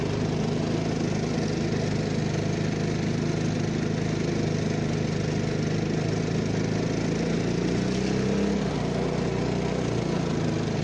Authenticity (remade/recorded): recorded